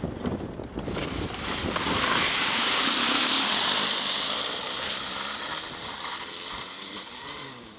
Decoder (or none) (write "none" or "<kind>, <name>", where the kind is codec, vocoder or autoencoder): vocoder, BigVGAN v2